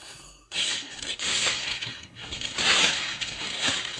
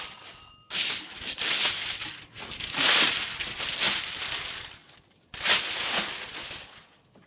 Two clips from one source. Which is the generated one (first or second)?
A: first